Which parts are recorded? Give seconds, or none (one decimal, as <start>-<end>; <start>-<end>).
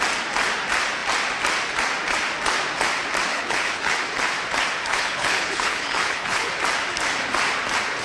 0.0-3.3; 4.0-4.9; 6.5-8.0